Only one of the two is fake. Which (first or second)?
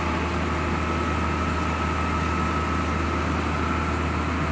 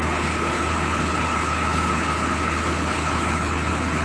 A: second